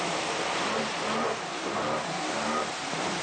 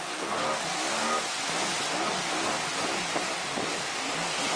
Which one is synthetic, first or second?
first